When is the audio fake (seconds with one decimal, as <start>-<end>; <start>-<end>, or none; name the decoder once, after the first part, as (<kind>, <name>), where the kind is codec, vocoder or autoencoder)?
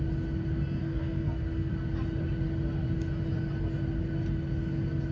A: 0.8-1.7 (codec, SNAC)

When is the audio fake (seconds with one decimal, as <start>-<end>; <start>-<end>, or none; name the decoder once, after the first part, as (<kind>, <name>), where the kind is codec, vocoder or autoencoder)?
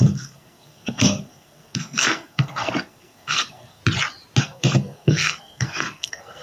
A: 0.0-3.8 (codec, SNAC); 4.4-6.4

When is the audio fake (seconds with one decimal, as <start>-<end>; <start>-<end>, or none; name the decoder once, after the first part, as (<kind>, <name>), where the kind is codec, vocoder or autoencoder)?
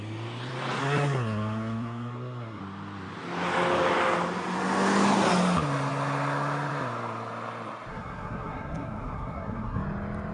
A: 0.8-2.6 (codec, SNAC); 7.9-9.8